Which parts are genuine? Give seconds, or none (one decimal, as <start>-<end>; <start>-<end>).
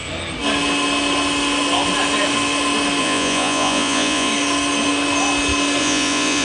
0.0-3.0; 4.3-5.8